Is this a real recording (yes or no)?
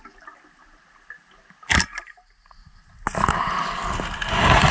yes